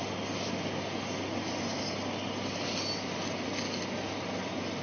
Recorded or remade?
recorded